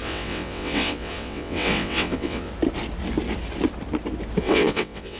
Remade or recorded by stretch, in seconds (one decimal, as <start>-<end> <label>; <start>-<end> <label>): 0.0-2.5 remade; 2.5-4.4 recorded; 4.4-5.2 remade